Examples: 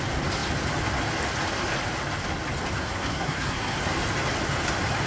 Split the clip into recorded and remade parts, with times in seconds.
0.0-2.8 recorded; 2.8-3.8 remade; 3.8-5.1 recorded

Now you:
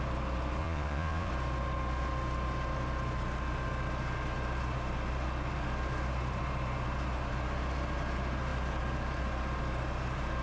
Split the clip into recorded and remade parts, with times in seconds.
0.0-0.6 recorded; 0.6-1.3 remade; 1.3-10.4 recorded

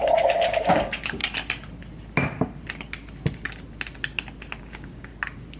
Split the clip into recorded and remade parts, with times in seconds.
0.0-1.2 remade; 1.2-4.6 recorded; 4.6-5.1 remade; 5.1-5.6 recorded

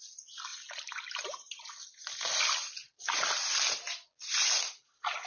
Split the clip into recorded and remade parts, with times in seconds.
0.0-5.3 recorded

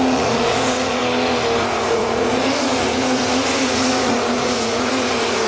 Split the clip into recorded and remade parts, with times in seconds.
0.0-1.0 remade; 1.0-1.6 recorded; 1.6-5.5 remade

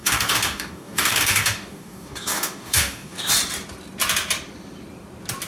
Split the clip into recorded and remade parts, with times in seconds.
0.0-3.3 remade; 3.3-5.5 recorded